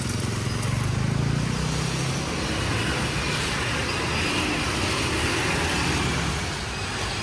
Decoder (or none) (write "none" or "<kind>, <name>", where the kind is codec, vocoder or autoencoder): none